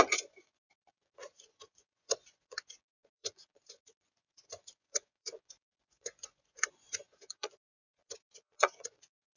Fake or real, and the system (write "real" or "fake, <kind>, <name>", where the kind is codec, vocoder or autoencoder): fake, vocoder, Vocos